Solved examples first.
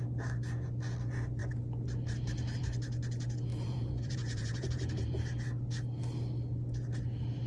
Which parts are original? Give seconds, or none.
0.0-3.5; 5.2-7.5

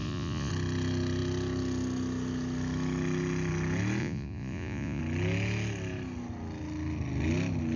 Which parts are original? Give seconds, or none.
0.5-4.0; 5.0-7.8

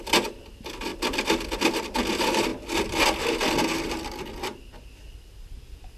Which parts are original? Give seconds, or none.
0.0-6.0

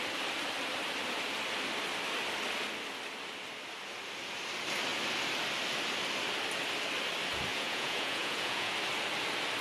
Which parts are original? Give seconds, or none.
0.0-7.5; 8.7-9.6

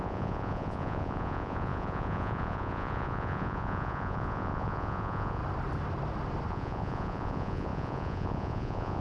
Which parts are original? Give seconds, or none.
5.4-6.5